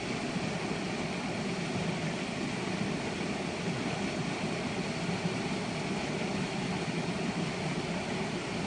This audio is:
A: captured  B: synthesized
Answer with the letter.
A